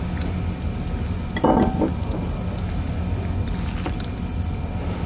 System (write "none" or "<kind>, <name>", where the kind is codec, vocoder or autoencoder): none